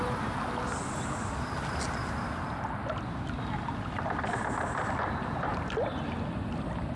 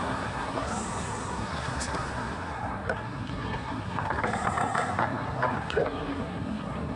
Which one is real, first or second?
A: first